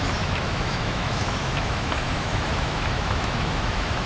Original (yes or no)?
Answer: no